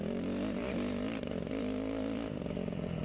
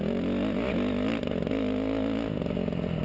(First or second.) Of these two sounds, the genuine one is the second